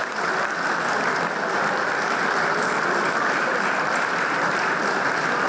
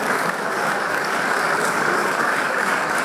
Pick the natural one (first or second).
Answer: first